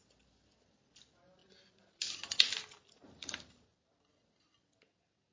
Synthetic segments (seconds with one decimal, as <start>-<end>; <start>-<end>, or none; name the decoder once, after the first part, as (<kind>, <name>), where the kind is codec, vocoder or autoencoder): 1.4-4.6 (vocoder, BigVGAN v2)